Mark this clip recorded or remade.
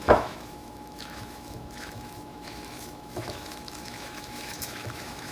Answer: remade